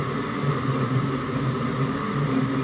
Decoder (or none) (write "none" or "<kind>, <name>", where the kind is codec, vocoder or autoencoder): none